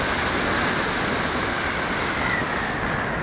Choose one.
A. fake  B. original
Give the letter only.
B